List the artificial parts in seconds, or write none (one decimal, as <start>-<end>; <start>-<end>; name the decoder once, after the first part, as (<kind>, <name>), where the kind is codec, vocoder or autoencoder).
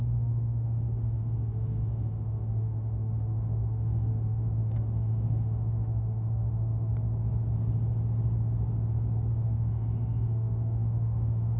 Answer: 0.0-6.9 (autoencoder, DAC-VAE); 9.3-11.6